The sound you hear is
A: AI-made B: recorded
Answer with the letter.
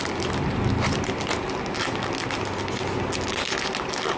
B